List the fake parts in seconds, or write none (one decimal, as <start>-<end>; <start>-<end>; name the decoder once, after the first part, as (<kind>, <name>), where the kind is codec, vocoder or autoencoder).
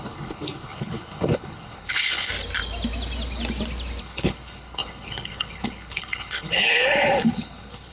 0.0-2.3 (codec, HILCodec); 4.0-7.9